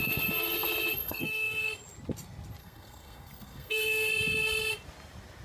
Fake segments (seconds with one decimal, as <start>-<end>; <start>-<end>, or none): 1.0-1.7; 2.6-4.1